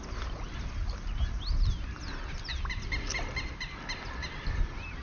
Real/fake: real